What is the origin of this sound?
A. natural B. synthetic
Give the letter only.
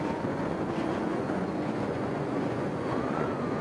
B